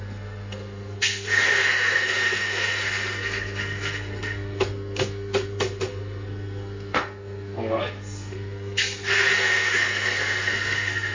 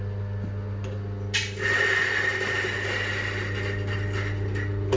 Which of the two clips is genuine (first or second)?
second